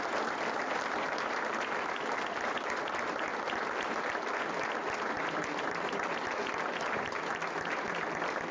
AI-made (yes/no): no